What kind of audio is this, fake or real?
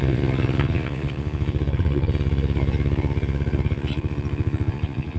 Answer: fake